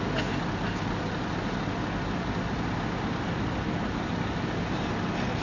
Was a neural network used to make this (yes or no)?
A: no